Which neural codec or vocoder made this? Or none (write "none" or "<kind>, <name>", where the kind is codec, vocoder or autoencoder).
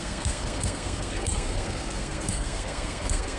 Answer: codec, SNAC